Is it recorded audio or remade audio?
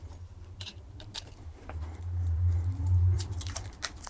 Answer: remade